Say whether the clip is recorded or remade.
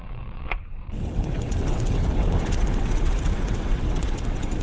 remade